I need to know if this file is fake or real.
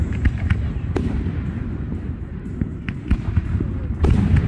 real